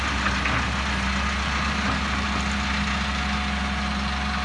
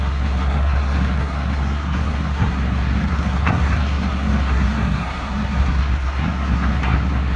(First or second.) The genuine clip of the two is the first